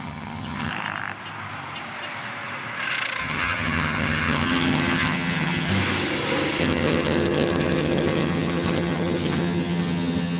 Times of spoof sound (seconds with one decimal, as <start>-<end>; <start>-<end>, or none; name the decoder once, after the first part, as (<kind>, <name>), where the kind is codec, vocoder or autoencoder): 0.0-0.7 (vocoder, HiFi-GAN); 3.2-5.7; 6.6-10.4